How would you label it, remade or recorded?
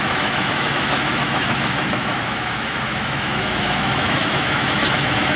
remade